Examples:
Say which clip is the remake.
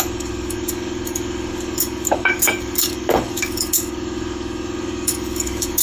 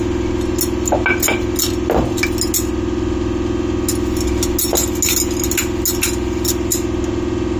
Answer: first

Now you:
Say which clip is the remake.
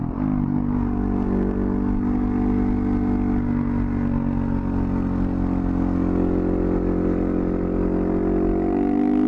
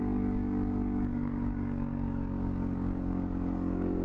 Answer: second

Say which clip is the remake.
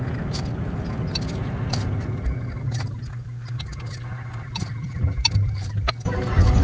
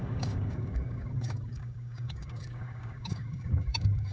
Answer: second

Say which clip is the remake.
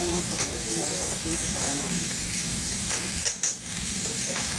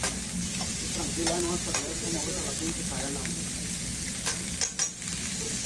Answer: first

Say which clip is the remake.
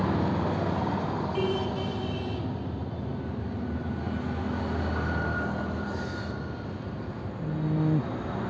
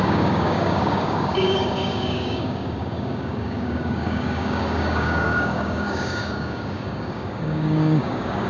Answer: second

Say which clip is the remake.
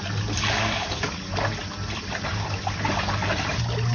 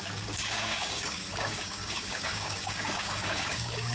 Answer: second